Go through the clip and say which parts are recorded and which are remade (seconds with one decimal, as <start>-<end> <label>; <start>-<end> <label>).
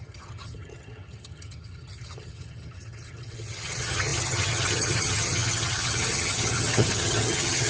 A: 0.0-7.7 remade